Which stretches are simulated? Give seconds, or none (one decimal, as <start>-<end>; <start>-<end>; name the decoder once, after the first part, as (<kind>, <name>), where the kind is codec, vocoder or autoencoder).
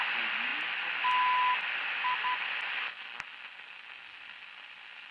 none